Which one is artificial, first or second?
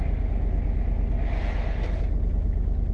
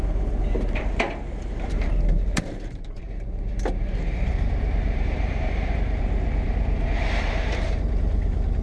second